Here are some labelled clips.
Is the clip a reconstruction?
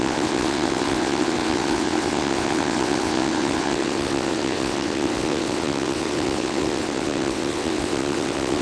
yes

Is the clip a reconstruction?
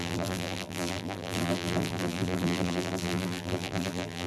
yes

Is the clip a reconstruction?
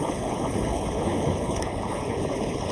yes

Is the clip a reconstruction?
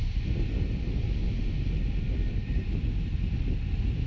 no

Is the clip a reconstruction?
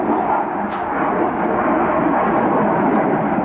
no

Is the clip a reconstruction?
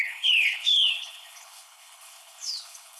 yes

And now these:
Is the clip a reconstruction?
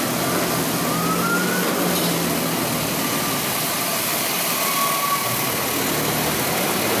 no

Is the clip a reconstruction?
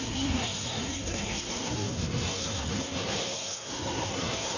yes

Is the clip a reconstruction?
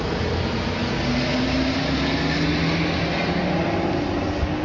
no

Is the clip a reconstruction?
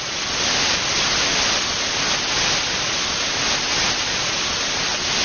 no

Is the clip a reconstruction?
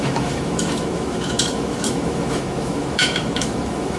yes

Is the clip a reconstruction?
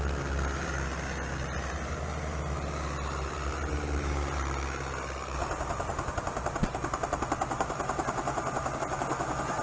no